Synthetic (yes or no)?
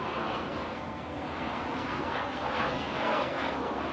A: yes